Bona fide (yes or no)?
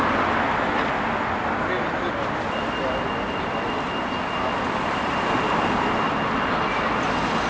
yes